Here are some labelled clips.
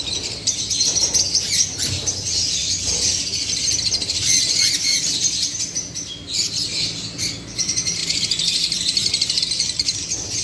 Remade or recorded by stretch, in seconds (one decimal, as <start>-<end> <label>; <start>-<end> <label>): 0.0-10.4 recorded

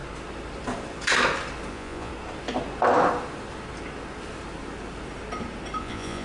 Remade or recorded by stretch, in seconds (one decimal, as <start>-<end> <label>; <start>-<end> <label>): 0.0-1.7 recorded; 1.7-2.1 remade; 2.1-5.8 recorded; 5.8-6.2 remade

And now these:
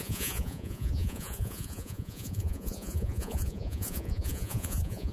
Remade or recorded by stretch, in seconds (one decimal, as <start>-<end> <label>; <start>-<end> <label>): 0.0-5.1 remade